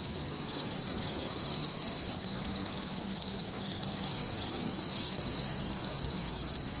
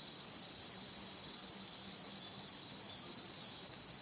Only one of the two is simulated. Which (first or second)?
first